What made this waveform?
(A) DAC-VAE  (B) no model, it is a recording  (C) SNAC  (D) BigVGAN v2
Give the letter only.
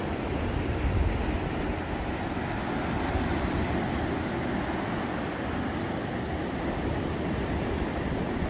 B